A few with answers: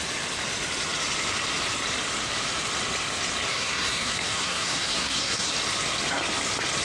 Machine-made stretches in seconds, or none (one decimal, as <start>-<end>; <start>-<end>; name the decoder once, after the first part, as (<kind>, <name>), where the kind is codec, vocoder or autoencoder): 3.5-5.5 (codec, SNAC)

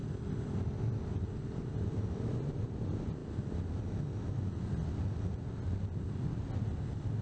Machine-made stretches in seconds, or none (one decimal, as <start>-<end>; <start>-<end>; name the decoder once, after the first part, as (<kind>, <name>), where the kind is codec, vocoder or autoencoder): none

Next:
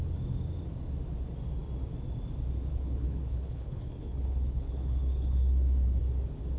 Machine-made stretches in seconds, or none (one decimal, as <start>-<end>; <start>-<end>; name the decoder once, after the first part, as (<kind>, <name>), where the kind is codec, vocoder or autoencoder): 2.7-6.0 (codec, HILCodec)